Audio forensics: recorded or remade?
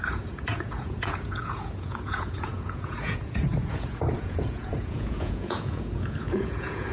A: remade